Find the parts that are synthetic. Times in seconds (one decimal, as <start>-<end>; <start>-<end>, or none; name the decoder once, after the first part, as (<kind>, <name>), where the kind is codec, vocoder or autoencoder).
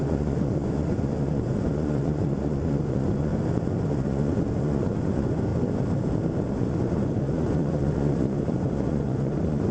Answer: 0.0-3.3 (vocoder, Vocos); 3.9-5.5; 6.5-9.7